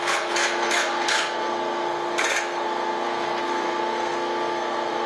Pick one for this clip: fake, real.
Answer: fake